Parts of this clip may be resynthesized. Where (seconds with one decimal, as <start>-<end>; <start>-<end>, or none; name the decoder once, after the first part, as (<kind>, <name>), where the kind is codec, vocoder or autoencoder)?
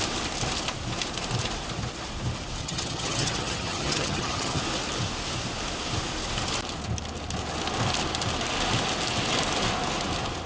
2.6-4.6 (vocoder, HiFi-GAN)